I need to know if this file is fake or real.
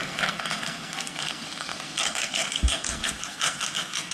fake